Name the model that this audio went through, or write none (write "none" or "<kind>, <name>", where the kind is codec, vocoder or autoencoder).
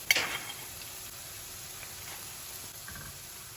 none